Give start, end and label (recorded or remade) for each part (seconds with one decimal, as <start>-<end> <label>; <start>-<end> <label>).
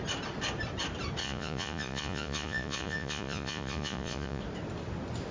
0.0-1.2 recorded; 1.2-4.4 remade; 4.4-5.3 recorded